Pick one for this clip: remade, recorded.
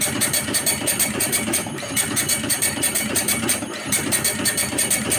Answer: remade